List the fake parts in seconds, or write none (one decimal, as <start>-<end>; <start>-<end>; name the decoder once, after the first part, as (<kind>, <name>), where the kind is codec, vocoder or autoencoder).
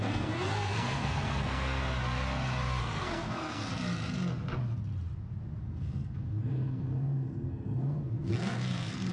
0.0-1.8 (codec, SNAC); 2.8-3.7; 5.6-9.1